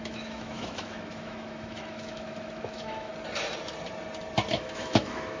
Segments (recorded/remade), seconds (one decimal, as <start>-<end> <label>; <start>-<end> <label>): 0.0-3.1 remade; 3.1-4.5 recorded; 4.5-5.4 remade